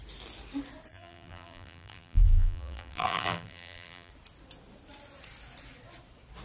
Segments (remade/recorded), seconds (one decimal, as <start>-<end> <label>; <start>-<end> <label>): 0.0-0.9 recorded; 0.9-4.1 remade; 4.1-6.4 recorded